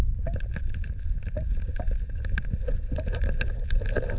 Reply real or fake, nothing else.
real